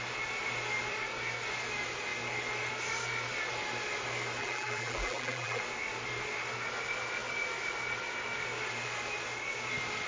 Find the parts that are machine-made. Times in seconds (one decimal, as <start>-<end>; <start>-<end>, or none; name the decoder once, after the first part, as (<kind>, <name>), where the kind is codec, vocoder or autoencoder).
4.4-5.6 (vocoder, BigVGAN v2)